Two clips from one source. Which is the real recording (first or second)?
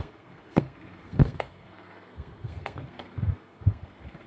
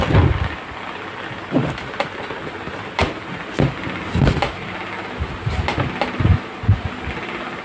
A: second